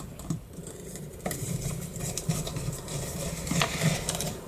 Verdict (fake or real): fake